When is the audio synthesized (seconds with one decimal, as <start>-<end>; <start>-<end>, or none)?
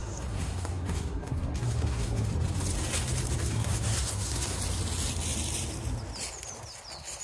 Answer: 0.0-2.3; 3.4-4.6